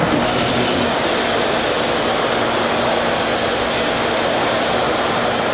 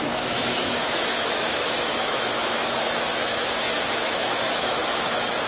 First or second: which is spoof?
second